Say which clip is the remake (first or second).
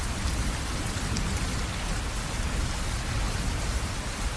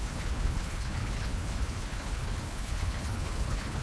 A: second